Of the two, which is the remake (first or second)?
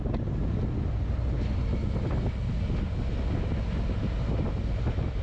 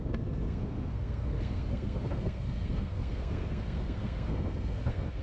second